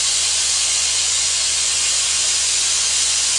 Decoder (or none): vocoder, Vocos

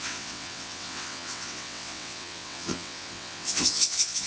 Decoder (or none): vocoder, WaveNeXt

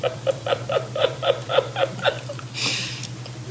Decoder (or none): vocoder, BigVGAN v2